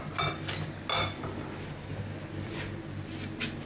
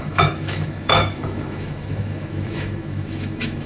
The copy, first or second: second